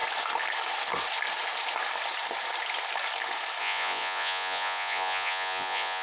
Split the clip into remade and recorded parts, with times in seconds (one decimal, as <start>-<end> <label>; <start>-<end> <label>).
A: 0.0-3.6 recorded; 3.6-6.0 remade